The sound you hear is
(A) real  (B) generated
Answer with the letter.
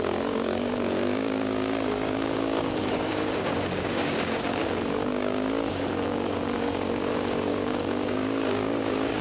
B